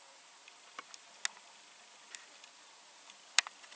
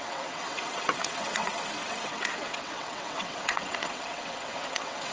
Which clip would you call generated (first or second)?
second